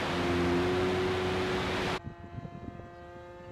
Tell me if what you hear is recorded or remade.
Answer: recorded